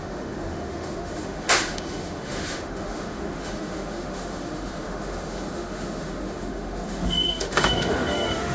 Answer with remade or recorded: remade